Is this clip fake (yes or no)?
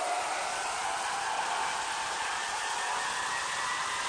no